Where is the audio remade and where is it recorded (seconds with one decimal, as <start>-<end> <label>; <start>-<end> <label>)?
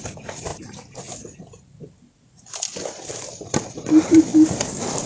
0.0-0.5 remade; 0.5-3.1 recorded; 3.1-5.1 remade